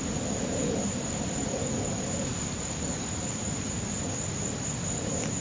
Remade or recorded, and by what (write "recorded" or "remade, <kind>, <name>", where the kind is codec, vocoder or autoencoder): recorded